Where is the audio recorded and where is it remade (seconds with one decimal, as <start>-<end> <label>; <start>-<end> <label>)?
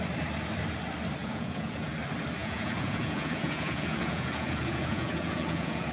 0.0-1.2 recorded; 1.2-1.9 remade; 1.9-2.4 recorded; 2.4-5.9 remade